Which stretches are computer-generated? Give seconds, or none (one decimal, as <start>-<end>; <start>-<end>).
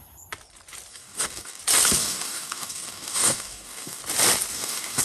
0.9-1.6; 2.0-4.0; 4.5-5.0